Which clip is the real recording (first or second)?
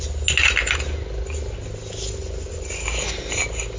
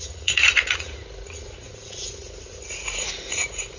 first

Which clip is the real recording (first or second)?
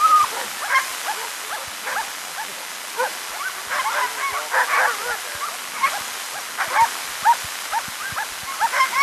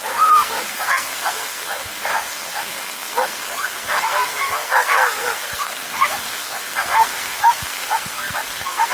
first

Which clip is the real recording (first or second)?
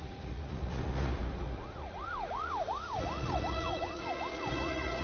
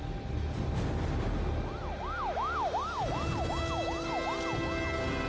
second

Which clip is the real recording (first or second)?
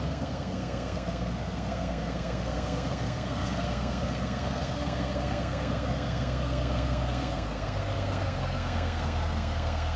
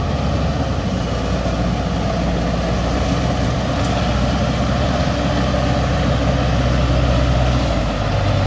second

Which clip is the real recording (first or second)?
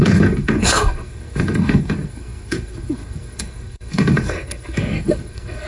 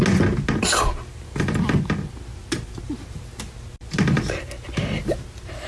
second